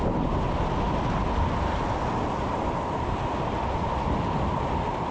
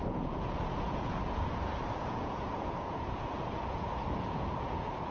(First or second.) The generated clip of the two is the second